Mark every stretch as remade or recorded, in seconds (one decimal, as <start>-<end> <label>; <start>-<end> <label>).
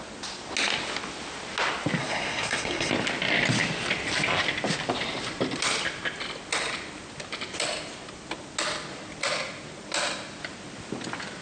0.0-2.0 recorded; 2.0-2.9 remade; 2.9-11.4 recorded